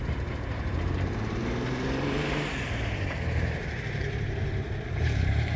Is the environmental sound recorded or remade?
remade